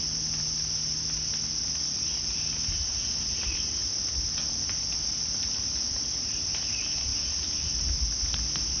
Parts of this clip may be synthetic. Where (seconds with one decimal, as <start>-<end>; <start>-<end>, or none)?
2.9-3.6